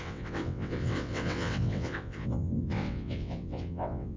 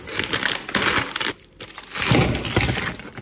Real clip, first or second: second